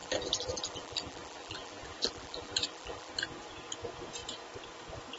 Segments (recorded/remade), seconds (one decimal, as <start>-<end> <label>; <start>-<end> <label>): 0.0-3.1 remade; 3.1-5.2 recorded